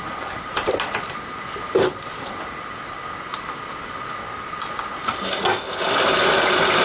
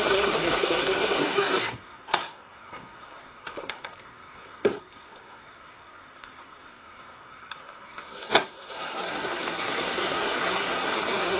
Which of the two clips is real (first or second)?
first